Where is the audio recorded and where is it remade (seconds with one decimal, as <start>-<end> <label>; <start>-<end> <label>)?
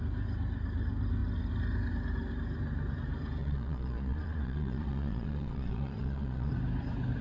0.0-3.4 recorded; 3.4-6.5 remade; 6.5-7.2 recorded